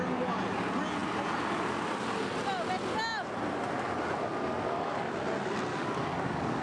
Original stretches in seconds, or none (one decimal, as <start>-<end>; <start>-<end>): 0.0-5.7